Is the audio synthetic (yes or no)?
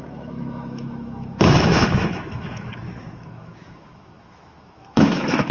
yes